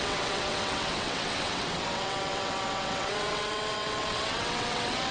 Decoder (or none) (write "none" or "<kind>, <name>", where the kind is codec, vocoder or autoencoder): vocoder, WaveNeXt